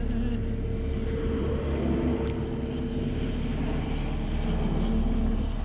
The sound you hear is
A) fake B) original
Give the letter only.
B